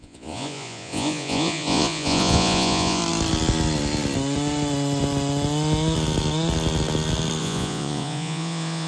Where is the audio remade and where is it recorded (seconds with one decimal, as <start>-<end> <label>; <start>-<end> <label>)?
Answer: 0.0-3.0 remade; 3.0-7.4 recorded; 7.4-8.9 remade